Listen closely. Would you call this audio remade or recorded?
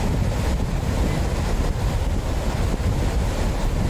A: recorded